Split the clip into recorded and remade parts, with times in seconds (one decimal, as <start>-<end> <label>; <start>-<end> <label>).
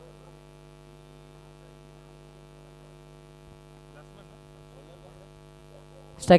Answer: 0.0-6.4 recorded